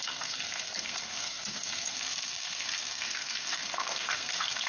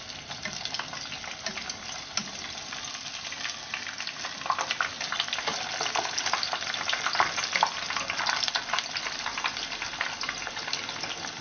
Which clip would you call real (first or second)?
second